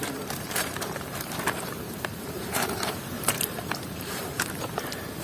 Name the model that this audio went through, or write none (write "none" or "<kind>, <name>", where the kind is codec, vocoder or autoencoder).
vocoder, BigVGAN v2